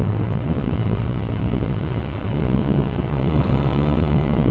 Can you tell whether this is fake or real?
fake